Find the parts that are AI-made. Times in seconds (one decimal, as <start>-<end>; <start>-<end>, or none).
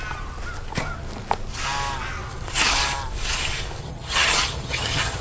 3.8-5.2